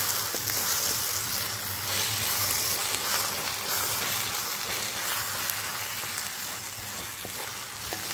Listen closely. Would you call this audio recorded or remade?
recorded